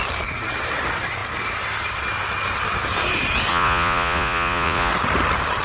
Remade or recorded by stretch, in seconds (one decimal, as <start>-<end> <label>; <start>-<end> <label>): 0.0-3.5 recorded; 3.5-4.9 remade; 4.9-5.6 recorded